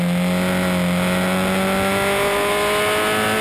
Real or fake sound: real